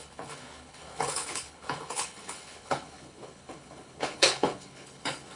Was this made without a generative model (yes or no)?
no